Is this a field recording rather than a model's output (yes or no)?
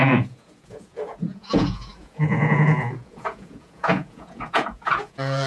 no